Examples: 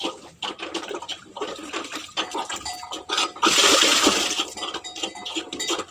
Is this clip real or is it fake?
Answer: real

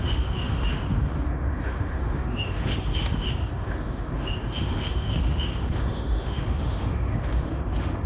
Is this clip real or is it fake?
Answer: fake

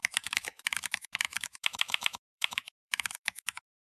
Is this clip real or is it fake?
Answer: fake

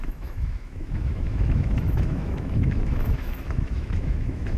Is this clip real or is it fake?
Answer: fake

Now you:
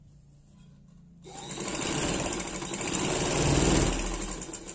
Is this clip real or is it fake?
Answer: real